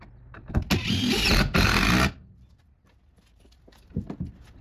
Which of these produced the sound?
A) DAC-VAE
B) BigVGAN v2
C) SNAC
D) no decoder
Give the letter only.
D